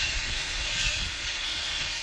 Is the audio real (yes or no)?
no